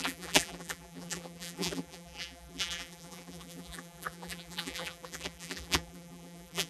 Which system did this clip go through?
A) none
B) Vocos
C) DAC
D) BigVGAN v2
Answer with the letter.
D